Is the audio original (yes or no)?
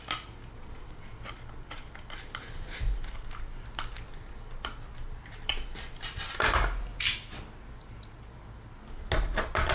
yes